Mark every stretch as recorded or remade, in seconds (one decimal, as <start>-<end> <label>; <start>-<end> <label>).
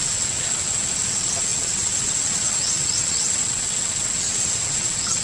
0.0-5.2 remade